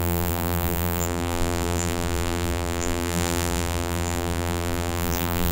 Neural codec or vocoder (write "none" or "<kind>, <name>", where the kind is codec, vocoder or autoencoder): vocoder, BigVGAN v2